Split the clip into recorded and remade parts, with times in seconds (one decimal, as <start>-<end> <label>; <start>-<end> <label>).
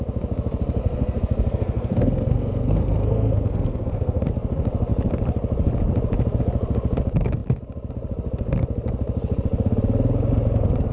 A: 0.0-0.8 recorded; 0.8-4.2 remade; 4.2-10.9 recorded